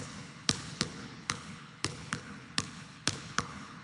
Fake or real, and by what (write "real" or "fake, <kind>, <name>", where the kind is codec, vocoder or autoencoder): fake, codec, HILCodec